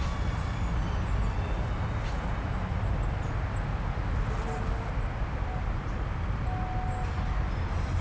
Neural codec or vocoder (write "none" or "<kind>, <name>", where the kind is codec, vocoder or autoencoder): none